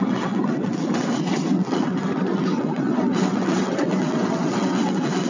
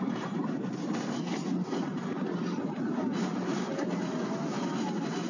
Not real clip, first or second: first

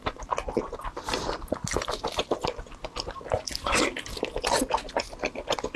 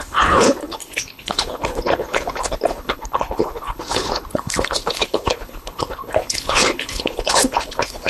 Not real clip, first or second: second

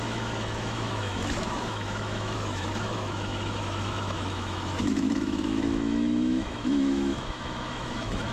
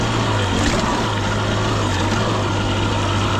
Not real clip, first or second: first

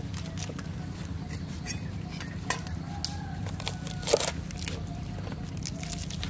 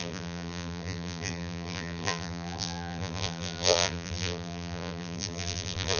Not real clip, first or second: second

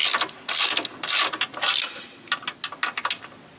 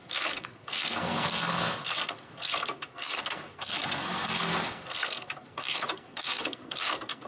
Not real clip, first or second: second